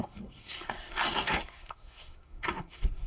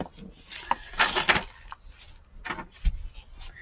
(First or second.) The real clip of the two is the second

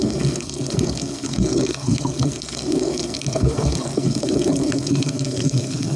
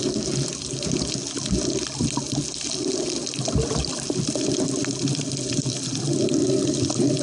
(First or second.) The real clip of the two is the second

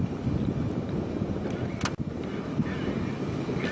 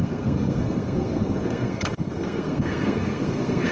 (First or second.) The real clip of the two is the first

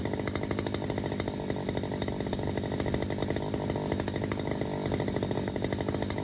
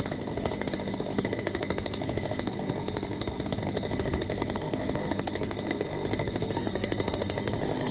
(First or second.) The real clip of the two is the first